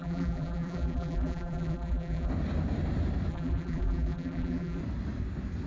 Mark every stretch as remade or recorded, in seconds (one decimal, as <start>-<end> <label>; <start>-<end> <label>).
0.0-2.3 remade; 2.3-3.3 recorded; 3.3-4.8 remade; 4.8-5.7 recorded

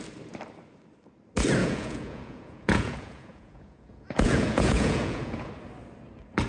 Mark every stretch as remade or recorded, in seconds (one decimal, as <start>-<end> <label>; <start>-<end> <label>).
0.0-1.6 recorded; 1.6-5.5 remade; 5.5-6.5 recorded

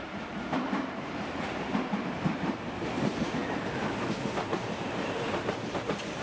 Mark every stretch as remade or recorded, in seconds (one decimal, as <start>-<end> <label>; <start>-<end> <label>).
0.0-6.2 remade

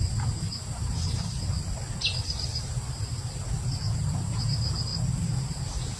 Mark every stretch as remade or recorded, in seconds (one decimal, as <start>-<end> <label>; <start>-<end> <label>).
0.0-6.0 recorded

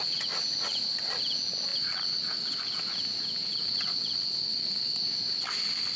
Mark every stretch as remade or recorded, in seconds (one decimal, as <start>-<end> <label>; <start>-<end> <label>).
0.0-6.0 recorded